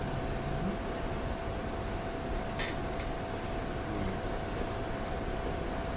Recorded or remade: recorded